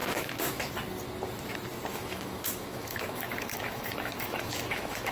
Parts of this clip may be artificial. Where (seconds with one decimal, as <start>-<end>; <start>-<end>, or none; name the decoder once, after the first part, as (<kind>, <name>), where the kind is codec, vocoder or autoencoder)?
0.0-0.7 (autoencoder, DAC-VAE); 1.9-5.1